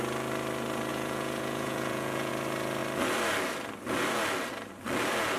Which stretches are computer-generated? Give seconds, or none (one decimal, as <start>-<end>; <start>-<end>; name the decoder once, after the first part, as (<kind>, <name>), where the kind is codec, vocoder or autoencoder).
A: 0.9-2.3 (vocoder, Vocos)